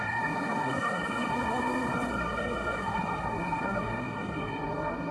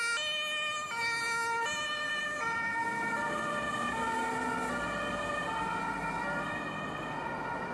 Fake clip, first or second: first